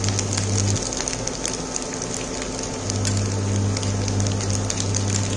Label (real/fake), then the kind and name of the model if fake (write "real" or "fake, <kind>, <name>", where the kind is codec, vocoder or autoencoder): real